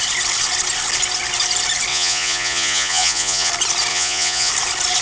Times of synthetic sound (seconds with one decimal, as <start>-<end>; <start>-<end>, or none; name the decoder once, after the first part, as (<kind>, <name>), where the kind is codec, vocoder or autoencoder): 1.9-3.5 (vocoder, Vocos); 3.9-4.5